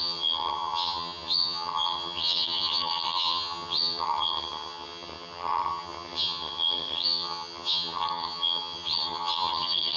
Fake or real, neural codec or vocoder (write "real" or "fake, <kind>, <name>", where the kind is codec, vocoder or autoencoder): fake, vocoder, HiFi-GAN